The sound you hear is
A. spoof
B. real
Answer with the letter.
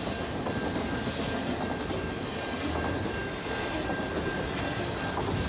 B